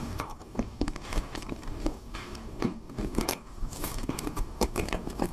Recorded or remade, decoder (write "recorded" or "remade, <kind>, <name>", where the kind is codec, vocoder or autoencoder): remade, codec, DAC